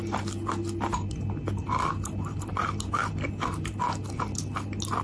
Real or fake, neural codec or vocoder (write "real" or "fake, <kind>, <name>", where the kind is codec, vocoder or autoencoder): real